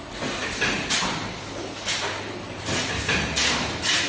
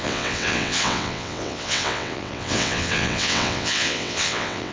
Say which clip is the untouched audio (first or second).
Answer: first